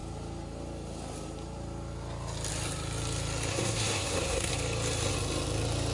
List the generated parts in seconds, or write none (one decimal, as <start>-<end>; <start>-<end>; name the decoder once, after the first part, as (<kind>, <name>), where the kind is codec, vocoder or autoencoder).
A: 3.5-4.5 (codec, SNAC)